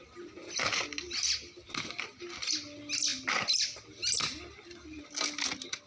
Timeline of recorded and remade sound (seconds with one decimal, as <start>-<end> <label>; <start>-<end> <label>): 0.0-5.9 recorded

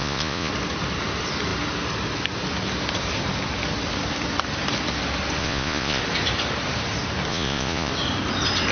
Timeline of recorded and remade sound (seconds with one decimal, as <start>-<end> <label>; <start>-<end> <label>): 0.0-0.5 remade; 0.5-5.4 recorded; 5.4-6.0 remade; 6.0-7.3 recorded; 7.3-7.9 remade; 7.9-8.7 recorded

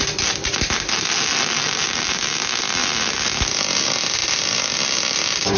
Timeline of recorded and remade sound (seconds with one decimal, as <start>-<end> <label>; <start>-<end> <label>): 0.0-5.6 recorded

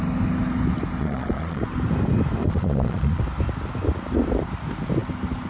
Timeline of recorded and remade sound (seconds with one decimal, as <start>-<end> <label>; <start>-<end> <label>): 0.0-1.0 recorded; 1.0-1.6 remade; 1.6-2.4 recorded; 2.4-3.2 remade; 3.2-5.5 recorded

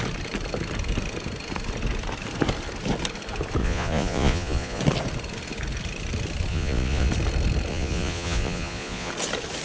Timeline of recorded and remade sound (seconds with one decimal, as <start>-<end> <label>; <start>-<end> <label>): 0.0-3.6 recorded; 3.6-4.8 remade; 4.8-6.5 recorded; 6.5-7.1 remade; 7.1-7.7 recorded; 7.7-9.1 remade; 9.1-9.6 recorded